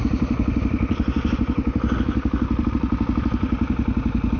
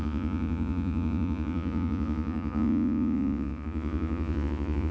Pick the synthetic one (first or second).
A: second